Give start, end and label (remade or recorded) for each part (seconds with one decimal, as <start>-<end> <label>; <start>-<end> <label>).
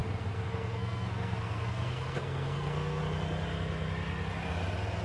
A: 0.0-3.0 remade; 3.0-5.0 recorded